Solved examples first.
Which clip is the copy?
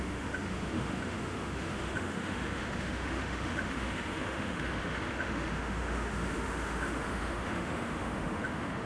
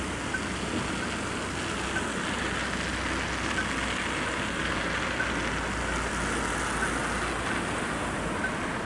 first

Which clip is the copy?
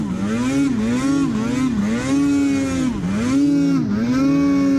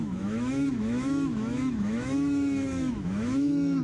second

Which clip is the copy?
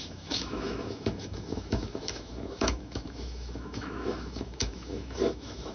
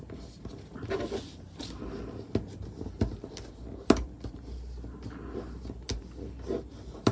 first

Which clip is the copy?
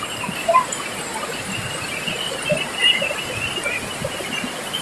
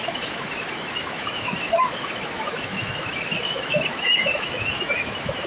second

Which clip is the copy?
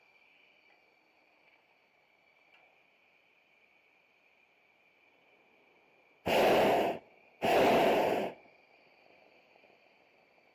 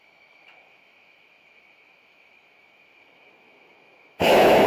second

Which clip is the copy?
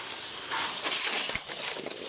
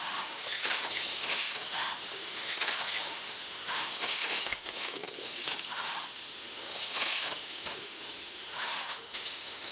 second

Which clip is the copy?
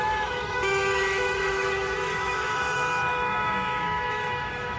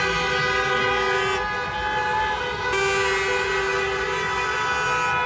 first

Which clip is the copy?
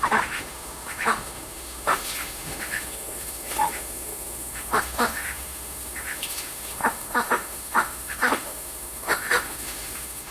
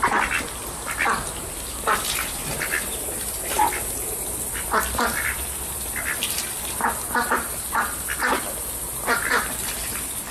first